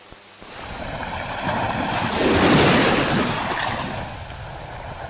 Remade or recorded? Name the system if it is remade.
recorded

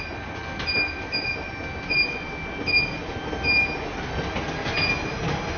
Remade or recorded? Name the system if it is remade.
recorded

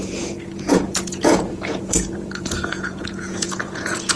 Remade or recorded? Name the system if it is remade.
remade, vocoder, Vocos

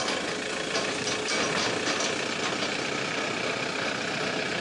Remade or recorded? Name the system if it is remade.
recorded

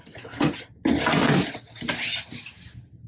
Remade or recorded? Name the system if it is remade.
recorded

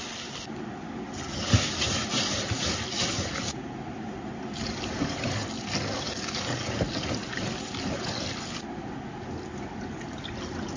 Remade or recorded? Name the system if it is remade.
recorded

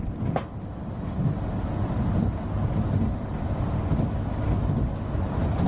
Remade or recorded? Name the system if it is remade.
recorded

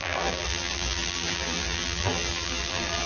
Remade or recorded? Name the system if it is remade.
remade, vocoder, BigVGAN v2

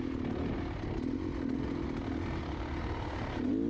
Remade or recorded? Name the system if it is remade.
recorded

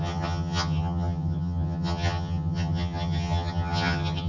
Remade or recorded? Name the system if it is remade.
remade, vocoder, HiFi-GAN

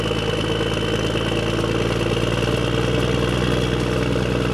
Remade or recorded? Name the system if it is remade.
recorded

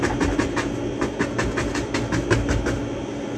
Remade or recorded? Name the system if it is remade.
recorded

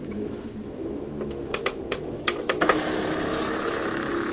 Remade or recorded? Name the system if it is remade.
remade, autoencoder, DAC-VAE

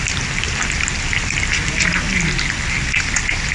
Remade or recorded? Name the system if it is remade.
recorded